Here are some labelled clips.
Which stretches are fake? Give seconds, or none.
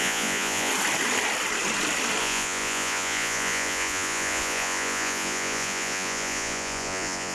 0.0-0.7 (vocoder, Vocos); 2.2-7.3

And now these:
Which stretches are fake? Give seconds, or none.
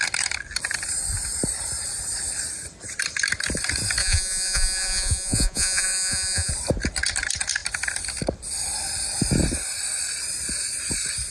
4.0-6.5 (vocoder, Vocos)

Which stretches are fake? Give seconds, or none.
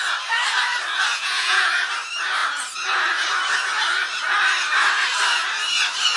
1.1-1.7 (vocoder, Vocos)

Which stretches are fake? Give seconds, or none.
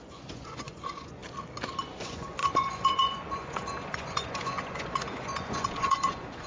0.0-1.2 (vocoder, Vocos); 1.8-6.5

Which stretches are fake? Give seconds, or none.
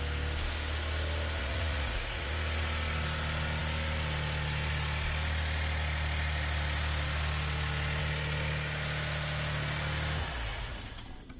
1.4-2.3 (vocoder, Vocos); 10.5-11.4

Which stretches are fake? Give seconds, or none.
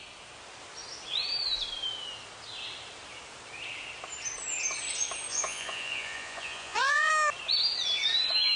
5.3-7.1 (vocoder, Vocos)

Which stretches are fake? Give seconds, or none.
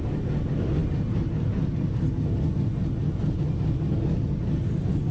none